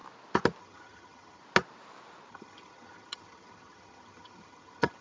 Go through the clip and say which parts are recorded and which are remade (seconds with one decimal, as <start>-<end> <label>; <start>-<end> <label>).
0.0-0.6 recorded; 0.6-1.4 remade; 1.4-2.3 recorded; 2.3-5.0 remade